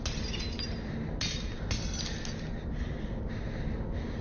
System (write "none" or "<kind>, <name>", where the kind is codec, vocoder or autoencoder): none